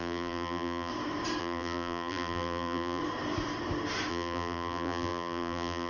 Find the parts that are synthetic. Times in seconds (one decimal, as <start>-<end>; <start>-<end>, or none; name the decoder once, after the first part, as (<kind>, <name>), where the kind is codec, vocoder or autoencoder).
0.0-0.9 (vocoder, BigVGAN v2); 1.4-3.0; 4.1-5.9